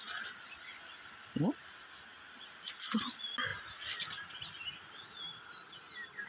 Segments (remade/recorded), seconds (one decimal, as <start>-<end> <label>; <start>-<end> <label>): 0.0-6.3 recorded